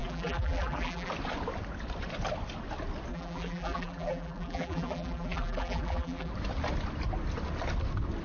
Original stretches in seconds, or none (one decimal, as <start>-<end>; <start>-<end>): 1.1-3.1; 6.3-8.2